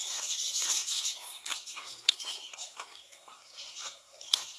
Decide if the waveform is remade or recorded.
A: remade